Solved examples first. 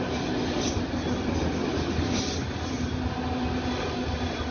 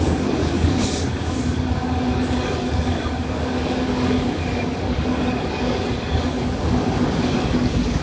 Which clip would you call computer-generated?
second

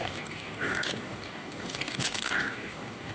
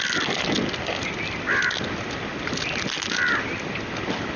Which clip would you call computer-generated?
first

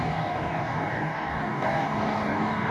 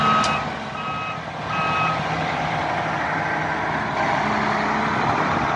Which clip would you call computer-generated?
first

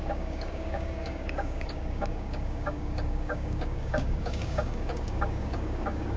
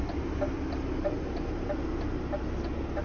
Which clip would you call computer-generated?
first